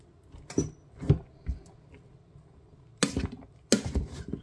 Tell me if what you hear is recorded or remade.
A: recorded